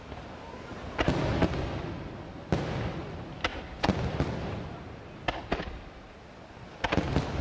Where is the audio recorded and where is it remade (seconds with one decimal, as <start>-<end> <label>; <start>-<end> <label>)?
0.0-7.4 recorded